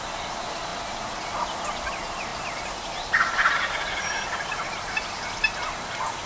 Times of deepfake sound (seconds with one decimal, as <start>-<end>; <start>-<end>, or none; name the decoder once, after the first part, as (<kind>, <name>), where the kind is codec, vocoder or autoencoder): none